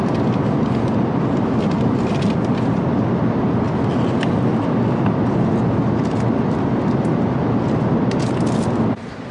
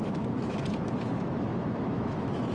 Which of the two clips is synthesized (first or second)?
second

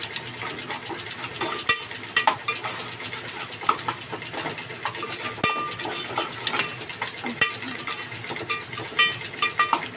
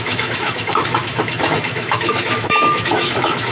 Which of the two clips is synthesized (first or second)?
second